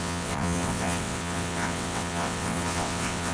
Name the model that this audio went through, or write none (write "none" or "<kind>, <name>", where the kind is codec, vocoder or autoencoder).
vocoder, WaveNeXt